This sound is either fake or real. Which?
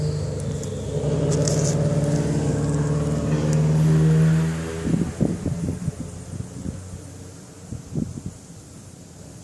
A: real